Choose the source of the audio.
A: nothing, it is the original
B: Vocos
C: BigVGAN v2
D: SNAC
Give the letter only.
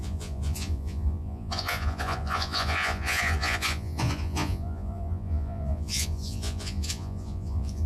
B